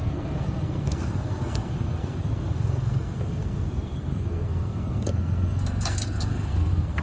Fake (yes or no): yes